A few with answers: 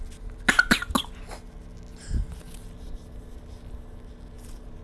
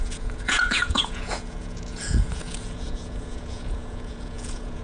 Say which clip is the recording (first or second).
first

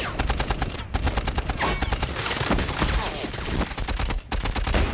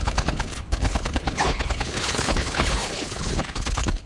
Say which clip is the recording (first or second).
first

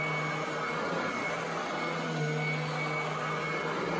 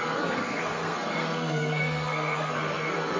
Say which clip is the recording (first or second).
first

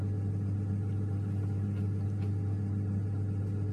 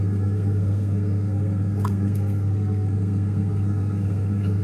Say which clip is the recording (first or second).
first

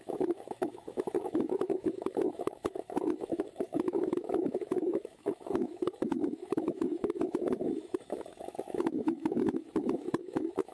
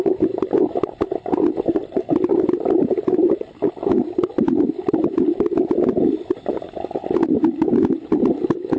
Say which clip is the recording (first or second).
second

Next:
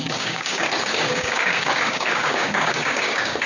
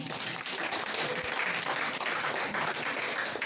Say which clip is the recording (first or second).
second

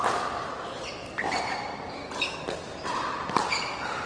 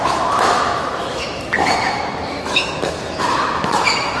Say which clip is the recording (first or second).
first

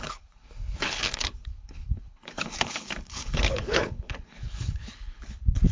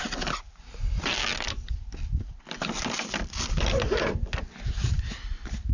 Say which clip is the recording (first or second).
second